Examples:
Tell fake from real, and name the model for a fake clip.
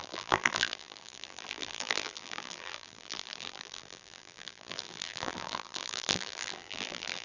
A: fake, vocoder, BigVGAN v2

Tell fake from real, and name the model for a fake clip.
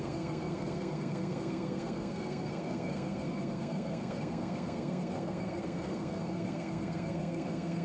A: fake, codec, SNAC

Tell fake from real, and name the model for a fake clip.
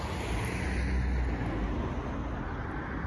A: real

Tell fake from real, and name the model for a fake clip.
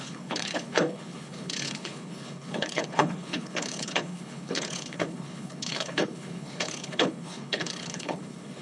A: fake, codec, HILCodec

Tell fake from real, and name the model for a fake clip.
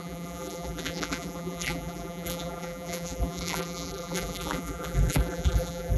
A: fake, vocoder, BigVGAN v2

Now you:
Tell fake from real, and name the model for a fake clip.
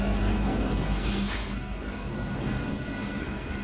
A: fake, codec, SNAC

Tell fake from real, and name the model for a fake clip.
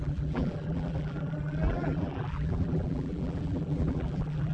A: fake, vocoder, BigVGAN v2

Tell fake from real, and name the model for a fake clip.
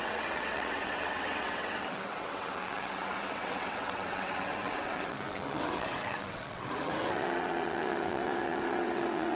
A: fake, vocoder, WaveNeXt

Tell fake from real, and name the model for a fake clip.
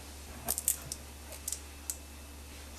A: real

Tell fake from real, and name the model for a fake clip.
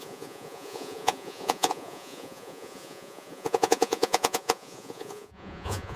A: fake, vocoder, Vocos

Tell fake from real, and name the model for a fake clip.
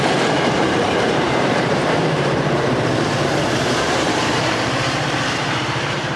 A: fake, vocoder, BigVGAN v2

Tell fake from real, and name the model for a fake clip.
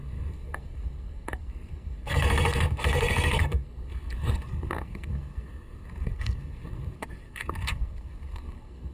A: fake, codec, SNAC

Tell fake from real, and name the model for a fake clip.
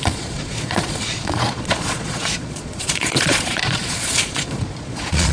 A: fake, vocoder, Vocos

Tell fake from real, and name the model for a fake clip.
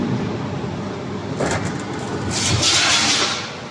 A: real